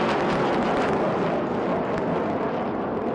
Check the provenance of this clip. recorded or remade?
recorded